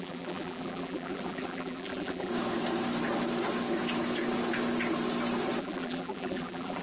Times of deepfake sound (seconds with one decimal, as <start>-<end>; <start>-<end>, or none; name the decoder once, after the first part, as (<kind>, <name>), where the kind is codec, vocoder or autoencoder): 0.0-2.3 (vocoder, BigVGAN v2); 5.6-6.8